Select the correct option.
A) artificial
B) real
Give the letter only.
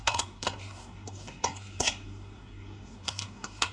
A